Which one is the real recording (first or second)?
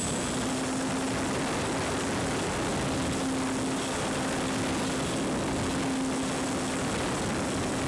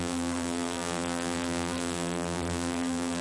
first